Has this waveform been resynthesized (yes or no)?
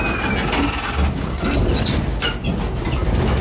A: no